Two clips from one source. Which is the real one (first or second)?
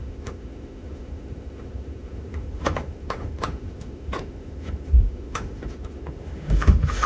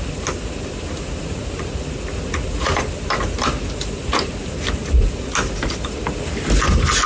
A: second